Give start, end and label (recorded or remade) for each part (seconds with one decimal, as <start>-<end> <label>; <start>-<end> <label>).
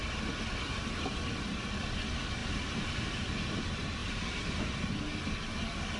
0.0-2.4 recorded; 2.4-3.6 remade; 3.6-4.0 recorded; 4.0-5.0 remade; 5.0-6.0 recorded